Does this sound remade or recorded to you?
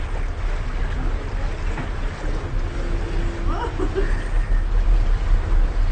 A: recorded